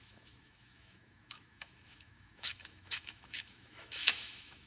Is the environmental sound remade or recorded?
remade